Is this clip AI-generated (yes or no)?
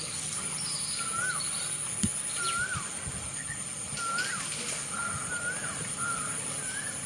no